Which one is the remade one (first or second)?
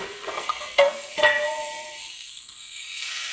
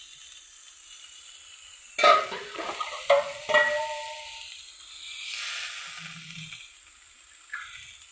first